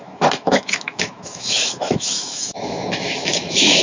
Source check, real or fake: fake